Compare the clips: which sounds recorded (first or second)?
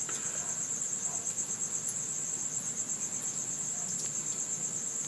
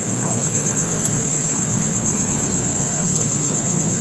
first